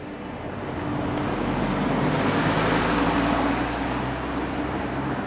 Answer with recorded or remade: recorded